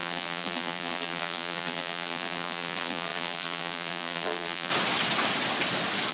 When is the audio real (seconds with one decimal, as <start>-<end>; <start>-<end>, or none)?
4.7-6.1